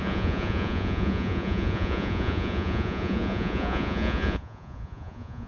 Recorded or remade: remade